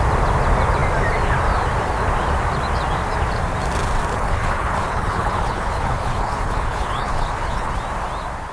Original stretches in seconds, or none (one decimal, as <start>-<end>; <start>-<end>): 0.0-4.1; 7.7-8.5